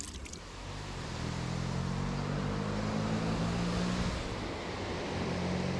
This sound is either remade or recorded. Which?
recorded